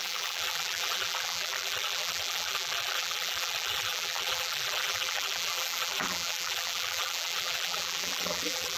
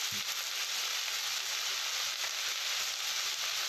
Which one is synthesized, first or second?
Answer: first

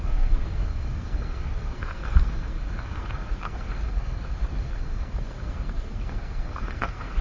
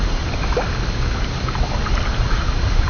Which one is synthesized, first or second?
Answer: first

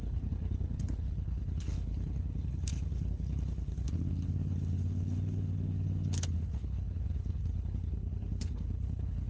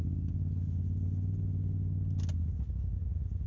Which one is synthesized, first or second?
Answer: first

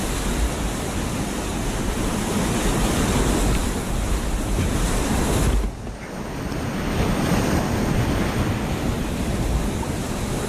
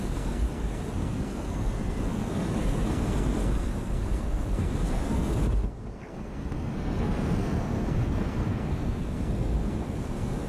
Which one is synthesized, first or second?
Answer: second